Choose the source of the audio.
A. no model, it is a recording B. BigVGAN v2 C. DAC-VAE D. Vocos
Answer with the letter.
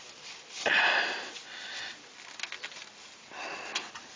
A